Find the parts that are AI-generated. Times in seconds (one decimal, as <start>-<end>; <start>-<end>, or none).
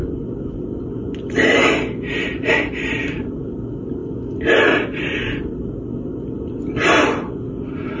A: none